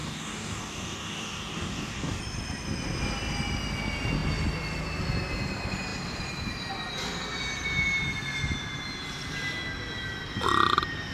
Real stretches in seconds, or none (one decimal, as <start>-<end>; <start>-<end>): 2.2-11.1